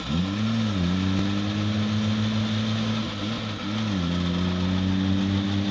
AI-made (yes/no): no